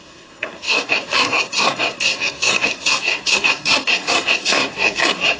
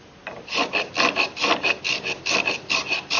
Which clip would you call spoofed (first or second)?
first